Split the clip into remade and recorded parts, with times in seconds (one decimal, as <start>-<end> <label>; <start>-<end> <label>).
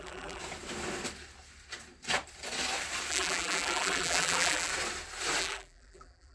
0.0-0.4 remade; 0.4-3.1 recorded; 3.1-4.7 remade; 4.7-5.4 recorded; 5.4-6.3 remade